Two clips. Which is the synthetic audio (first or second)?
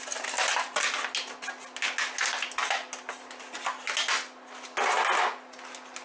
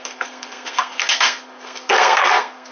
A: second